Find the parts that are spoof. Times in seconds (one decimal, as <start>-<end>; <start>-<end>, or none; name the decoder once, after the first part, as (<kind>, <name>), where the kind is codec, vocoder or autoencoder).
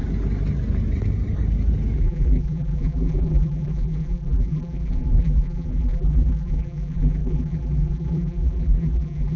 2.0-9.4 (vocoder, BigVGAN v2)